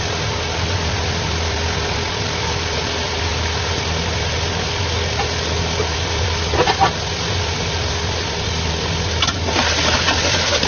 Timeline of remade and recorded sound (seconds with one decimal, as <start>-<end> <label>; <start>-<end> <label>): 0.0-3.3 remade; 3.3-6.0 recorded; 6.0-10.7 remade